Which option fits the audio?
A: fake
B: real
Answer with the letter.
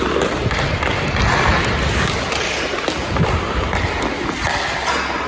B